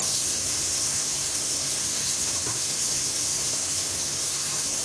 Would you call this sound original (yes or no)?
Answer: no